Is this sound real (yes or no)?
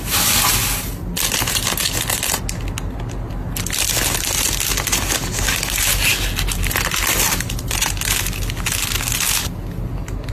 yes